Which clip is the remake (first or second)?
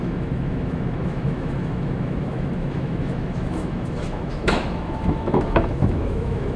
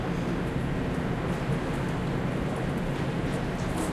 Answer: first